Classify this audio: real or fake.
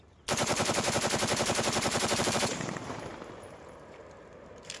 fake